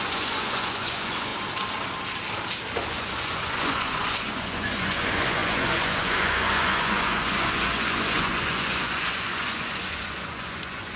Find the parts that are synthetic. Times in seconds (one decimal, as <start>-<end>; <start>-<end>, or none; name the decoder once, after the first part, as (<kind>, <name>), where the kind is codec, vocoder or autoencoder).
0.0-1.3 (vocoder, Vocos); 2.9-11.0

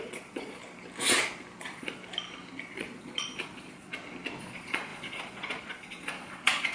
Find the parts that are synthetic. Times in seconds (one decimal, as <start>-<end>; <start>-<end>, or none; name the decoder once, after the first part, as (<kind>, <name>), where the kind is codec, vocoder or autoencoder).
0.0-0.6 (vocoder, Vocos); 1.6-2.0; 2.7-3.9; 4.4-6.7

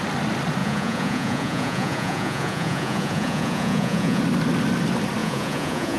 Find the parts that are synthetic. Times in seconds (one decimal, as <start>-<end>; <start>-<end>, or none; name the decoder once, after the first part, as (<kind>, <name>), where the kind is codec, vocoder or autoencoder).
0.6-4.2 (vocoder, Vocos); 5.2-6.0